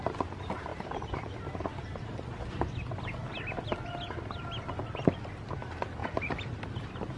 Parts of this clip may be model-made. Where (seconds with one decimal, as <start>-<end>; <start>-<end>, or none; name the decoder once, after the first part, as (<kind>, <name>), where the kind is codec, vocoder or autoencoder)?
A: 0.7-1.3 (vocoder, BigVGAN v2); 6.0-6.6